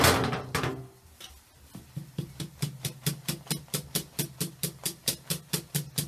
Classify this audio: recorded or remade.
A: recorded